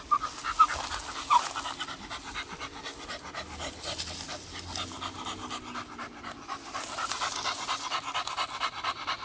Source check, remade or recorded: recorded